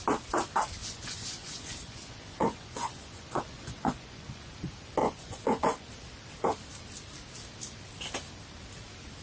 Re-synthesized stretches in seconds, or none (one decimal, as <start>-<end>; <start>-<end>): 0.8-4.5; 5.0-5.9